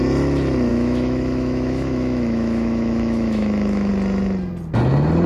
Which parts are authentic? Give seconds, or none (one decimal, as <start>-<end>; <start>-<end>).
0.0-0.7; 3.9-5.3